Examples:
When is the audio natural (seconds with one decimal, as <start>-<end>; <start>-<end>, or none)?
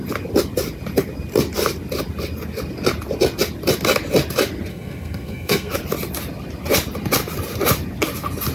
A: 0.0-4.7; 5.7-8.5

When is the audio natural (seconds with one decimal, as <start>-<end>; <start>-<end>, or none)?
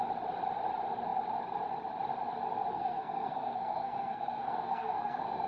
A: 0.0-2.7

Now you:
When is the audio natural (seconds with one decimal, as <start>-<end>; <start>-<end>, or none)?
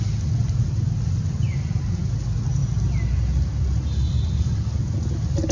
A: 0.0-5.5